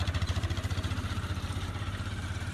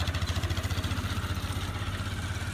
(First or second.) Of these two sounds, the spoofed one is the first